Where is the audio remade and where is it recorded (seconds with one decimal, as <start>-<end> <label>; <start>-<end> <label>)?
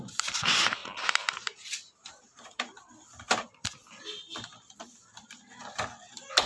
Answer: 0.0-0.8 remade; 0.8-1.3 recorded; 1.3-2.9 remade; 2.9-6.5 recorded